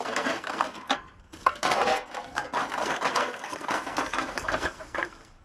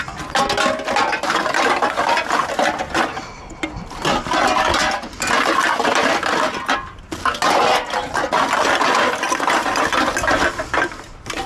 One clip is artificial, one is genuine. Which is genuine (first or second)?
second